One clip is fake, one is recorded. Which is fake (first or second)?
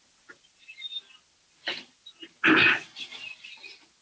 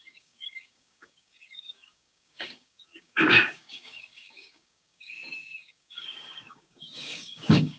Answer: second